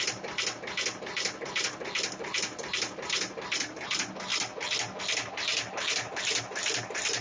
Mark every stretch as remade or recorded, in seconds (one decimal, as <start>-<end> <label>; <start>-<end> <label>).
0.0-7.2 recorded